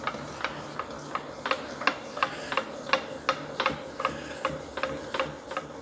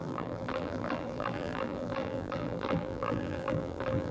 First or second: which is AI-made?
second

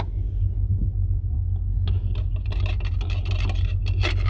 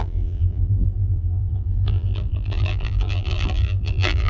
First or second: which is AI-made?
second